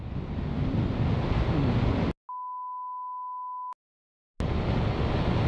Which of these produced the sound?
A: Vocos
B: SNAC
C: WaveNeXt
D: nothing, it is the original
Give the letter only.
D